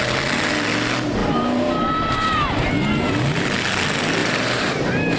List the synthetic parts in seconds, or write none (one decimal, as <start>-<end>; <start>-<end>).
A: 1.2-2.7; 4.2-5.2